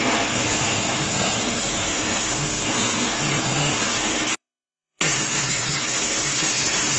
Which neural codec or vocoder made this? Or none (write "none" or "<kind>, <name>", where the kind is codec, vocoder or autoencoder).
codec, SNAC